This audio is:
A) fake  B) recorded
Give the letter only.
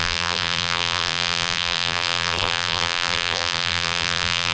A